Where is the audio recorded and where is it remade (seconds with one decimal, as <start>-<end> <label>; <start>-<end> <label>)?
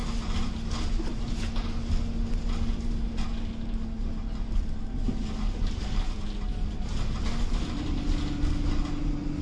0.0-9.4 recorded